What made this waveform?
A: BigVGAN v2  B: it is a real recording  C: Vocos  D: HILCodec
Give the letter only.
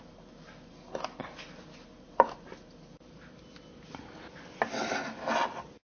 B